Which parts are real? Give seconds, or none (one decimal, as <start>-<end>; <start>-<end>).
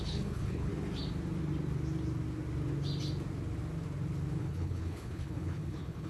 0.7-4.4